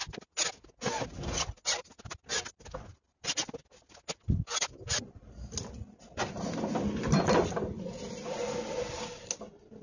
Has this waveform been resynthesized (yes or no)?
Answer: no